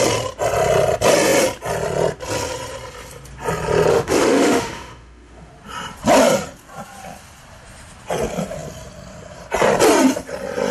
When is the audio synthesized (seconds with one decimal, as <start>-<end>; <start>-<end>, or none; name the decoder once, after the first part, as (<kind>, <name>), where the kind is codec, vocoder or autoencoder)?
3.9-5.5 (autoencoder, DAC-VAE)

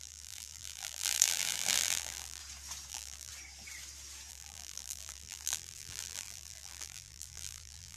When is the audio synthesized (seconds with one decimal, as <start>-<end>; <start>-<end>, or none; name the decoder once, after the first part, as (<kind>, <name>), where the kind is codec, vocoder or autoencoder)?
0.0-2.4 (vocoder, BigVGAN v2); 2.9-3.3; 4.3-8.0

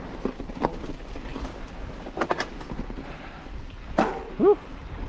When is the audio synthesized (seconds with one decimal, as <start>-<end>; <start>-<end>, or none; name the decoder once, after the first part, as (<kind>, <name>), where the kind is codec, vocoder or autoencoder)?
none

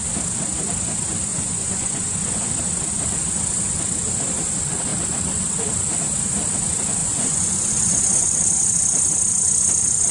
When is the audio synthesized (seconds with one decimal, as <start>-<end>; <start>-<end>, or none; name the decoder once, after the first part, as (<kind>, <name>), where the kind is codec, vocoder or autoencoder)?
1.3-2.5 (vocoder, Vocos); 7.0-8.3

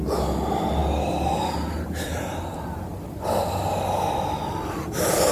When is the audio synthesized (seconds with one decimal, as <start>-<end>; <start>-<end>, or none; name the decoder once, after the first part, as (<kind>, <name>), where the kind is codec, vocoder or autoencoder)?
none

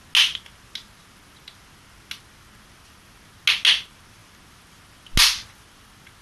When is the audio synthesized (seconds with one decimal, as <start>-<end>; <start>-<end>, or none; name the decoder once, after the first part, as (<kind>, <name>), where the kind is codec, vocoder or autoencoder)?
none